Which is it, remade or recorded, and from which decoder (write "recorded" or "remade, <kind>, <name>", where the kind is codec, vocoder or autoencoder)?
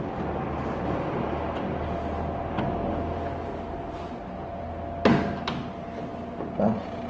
recorded